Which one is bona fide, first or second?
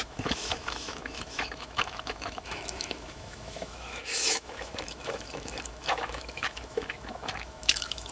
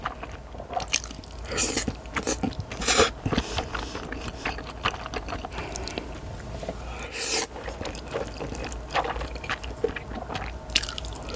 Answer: second